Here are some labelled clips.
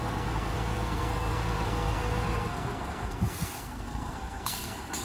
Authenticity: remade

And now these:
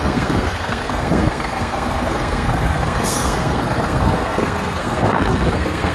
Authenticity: remade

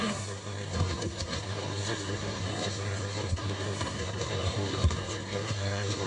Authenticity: remade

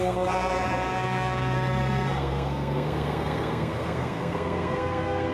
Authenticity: remade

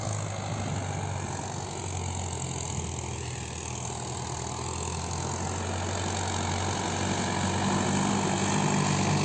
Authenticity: recorded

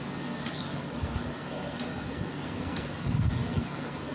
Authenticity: remade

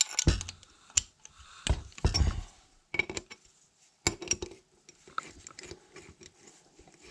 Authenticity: recorded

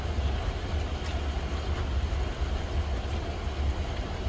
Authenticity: recorded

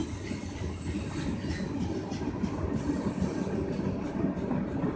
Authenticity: recorded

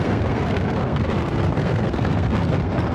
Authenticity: remade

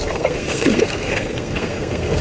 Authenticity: remade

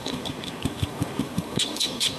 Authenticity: remade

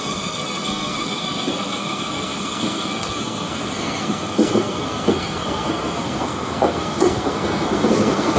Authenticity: remade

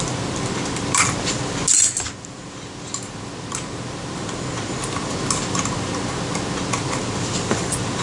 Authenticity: recorded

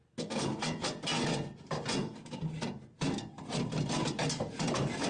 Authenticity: recorded